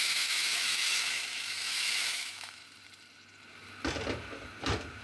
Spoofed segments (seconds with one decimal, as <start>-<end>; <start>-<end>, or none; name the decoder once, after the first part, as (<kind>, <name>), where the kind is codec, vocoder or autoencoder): 0.0-2.6 (autoencoder, DAC-VAE)